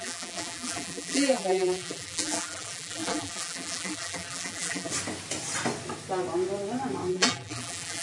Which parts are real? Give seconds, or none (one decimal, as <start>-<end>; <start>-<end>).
4.9-7.1

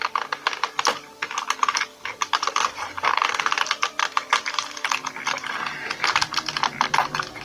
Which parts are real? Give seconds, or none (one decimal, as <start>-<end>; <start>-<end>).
0.0-2.1; 3.3-7.4